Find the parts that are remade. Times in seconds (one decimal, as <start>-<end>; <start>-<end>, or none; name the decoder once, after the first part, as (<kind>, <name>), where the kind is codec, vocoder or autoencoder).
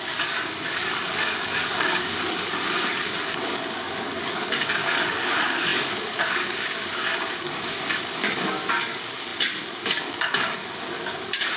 0.0-11.6 (codec, DAC)